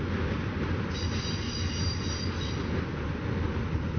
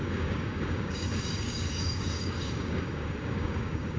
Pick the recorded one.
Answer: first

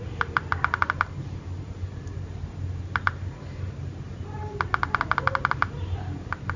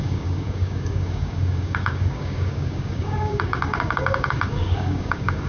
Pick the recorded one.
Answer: first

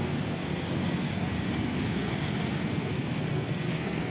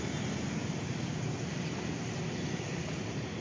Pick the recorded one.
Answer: second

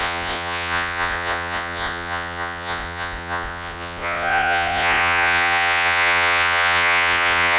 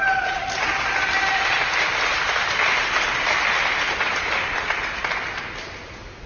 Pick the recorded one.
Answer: second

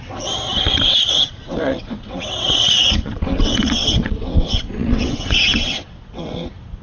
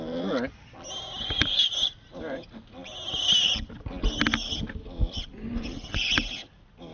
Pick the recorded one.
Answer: second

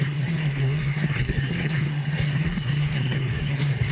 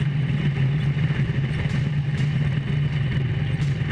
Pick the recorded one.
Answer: second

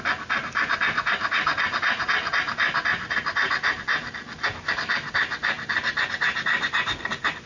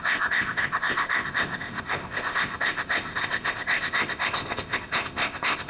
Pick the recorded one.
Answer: first